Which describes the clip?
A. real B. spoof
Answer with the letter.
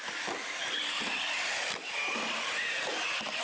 A